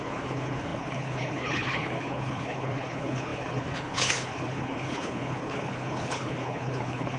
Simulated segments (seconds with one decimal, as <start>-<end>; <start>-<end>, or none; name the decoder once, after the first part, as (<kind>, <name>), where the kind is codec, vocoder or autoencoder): 0.0-7.2 (codec, HILCodec)